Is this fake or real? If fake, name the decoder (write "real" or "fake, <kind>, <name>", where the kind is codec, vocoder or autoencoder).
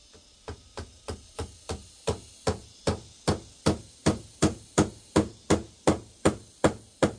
real